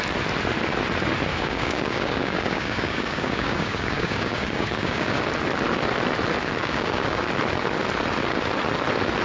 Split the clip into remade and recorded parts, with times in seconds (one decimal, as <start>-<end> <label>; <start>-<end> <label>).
0.0-1.3 recorded; 1.3-5.2 remade; 5.2-6.6 recorded; 6.6-7.3 remade; 7.3-9.2 recorded